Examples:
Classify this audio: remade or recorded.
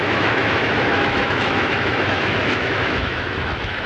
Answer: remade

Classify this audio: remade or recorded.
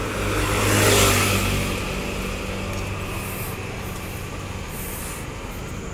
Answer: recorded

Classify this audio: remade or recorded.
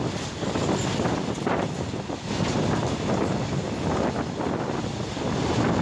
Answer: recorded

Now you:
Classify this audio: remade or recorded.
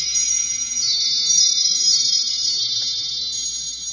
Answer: remade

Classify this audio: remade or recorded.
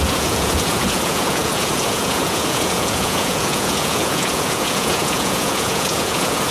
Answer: remade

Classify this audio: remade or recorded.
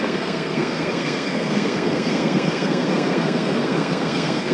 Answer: remade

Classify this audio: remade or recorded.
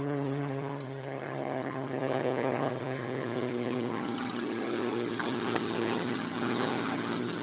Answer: remade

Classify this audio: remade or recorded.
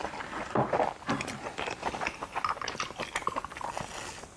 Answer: recorded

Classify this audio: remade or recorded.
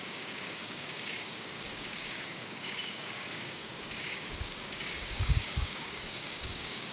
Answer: remade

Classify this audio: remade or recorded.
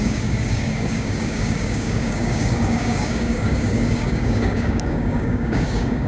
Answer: remade